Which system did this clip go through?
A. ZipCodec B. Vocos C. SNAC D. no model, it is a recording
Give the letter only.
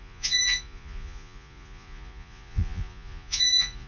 B